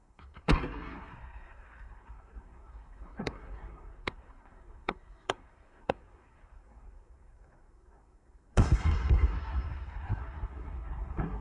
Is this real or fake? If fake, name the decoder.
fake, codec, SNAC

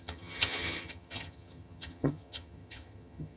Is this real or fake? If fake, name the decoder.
fake, vocoder, HiFi-GAN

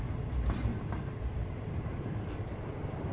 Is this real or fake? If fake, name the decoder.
real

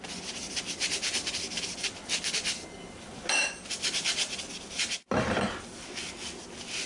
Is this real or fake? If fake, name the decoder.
real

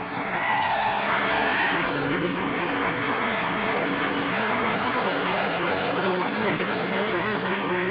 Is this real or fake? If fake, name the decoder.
fake, codec, SNAC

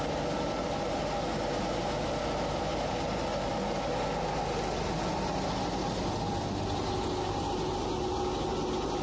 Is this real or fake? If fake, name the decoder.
real